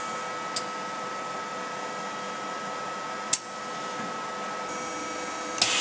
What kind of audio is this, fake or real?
real